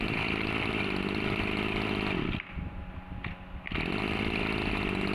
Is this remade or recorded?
recorded